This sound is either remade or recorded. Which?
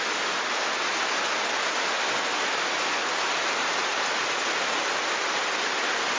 recorded